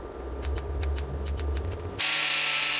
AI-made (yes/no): no